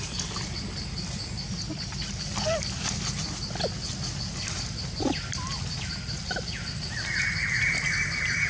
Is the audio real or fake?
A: real